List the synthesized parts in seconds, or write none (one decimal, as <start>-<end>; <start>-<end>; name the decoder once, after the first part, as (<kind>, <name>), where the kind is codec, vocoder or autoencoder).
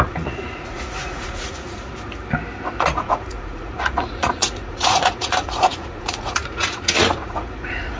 0.0-1.9 (vocoder, Vocos); 2.8-8.0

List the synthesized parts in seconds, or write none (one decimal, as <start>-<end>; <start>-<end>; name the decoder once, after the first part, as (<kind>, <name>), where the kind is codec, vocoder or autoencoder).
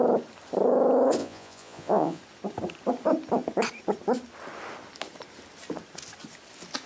1.2-2.2 (vocoder, Vocos)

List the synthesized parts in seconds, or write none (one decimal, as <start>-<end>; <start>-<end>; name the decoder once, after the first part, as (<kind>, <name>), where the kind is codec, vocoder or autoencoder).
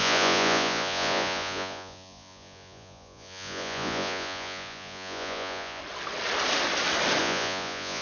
0.0-5.8 (vocoder, Vocos); 7.2-8.0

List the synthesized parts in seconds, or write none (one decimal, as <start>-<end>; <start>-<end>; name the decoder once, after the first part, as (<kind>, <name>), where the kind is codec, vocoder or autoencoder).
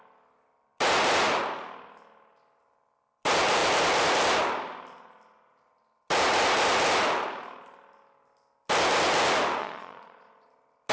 9.6-10.5 (vocoder, Vocos)